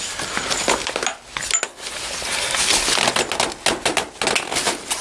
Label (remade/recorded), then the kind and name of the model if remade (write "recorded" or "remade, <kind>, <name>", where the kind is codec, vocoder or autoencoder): recorded